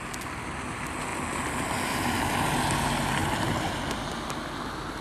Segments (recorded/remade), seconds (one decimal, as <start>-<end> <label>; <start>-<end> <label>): 0.0-3.2 recorded; 3.2-4.1 remade; 4.1-5.0 recorded